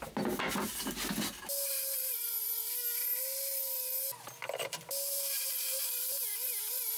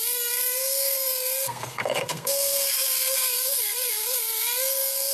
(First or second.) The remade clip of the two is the second